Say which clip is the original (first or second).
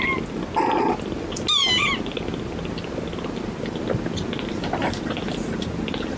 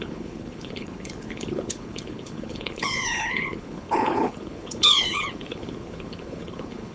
first